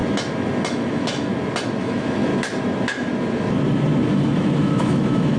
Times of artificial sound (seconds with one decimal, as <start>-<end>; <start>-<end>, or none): 0.7-1.3; 1.8-2.3; 4.1-5.4

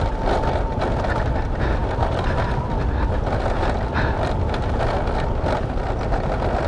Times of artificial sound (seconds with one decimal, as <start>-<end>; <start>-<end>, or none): none

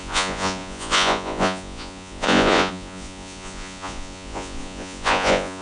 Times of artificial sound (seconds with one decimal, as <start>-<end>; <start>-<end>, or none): 0.0-5.6

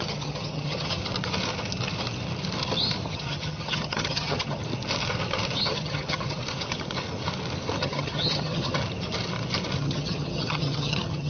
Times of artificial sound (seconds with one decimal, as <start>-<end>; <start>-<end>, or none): 0.0-1.0; 3.1-4.6; 5.7-6.4; 7.8-8.8; 9.8-11.3

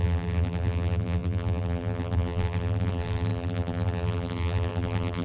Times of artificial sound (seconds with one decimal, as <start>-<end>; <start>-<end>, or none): 0.0-5.2

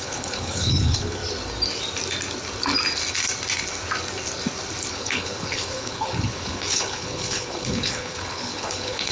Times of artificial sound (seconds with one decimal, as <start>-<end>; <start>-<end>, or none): 0.0-1.2; 4.9-9.1

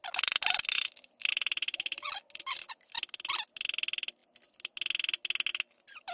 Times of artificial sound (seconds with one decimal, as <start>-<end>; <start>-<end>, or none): none